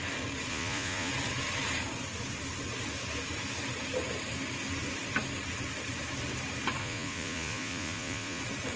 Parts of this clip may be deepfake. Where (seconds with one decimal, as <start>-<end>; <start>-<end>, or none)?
0.5-1.1; 6.8-8.4